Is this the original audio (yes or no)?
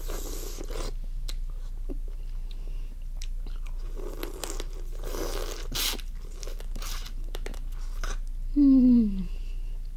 yes